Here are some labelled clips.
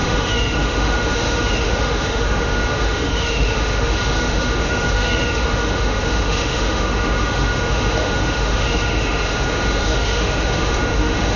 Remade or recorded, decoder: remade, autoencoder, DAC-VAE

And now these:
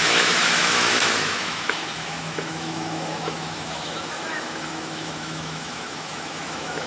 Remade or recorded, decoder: remade, autoencoder, DAC-VAE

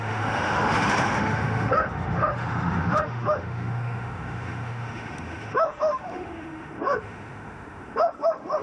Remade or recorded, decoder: remade, autoencoder, DAC-VAE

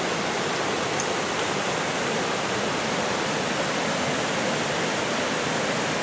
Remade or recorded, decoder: recorded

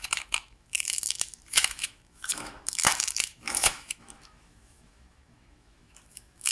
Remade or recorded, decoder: remade, autoencoder, DAC-VAE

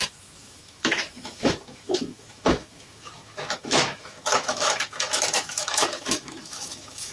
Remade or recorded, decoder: remade, autoencoder, DAC-VAE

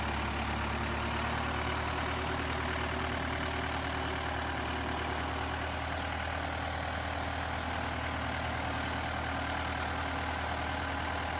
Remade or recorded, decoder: recorded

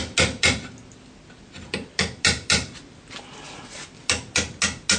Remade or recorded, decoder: recorded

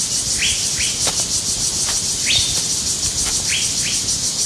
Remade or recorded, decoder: recorded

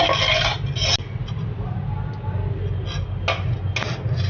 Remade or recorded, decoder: recorded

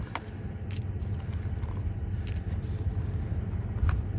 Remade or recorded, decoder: recorded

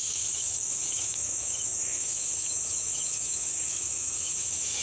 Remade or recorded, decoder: remade, autoencoder, DAC-VAE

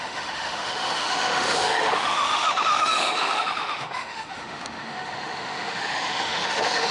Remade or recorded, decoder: remade, autoencoder, DAC-VAE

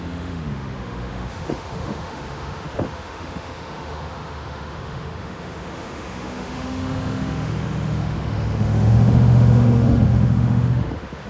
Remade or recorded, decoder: remade, autoencoder, DAC-VAE